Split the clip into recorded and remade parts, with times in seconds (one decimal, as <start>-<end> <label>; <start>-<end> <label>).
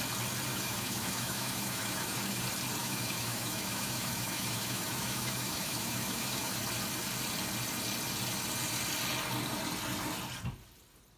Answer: 0.0-0.5 recorded; 0.5-2.4 remade; 2.4-2.8 recorded; 2.8-6.6 remade; 6.6-11.2 recorded